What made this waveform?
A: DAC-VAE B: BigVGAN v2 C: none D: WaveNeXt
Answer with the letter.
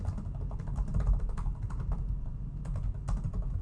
C